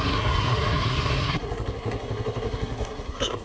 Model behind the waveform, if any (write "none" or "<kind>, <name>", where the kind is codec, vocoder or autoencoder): codec, SNAC